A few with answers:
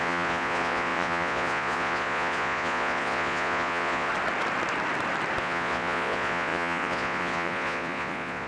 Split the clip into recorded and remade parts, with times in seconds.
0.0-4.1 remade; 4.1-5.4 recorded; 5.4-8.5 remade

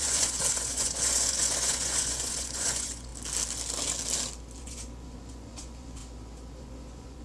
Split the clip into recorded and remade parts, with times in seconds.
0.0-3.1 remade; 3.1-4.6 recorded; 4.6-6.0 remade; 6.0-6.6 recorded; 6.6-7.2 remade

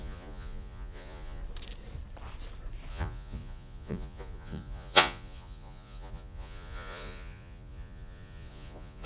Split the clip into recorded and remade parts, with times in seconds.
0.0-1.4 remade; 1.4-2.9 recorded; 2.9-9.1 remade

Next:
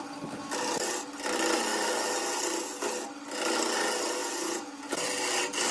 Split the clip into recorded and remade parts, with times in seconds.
0.0-4.2 recorded; 4.2-5.0 remade; 5.0-5.7 recorded